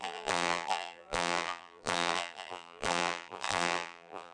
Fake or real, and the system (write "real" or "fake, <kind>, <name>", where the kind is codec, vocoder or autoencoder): fake, vocoder, BigVGAN v2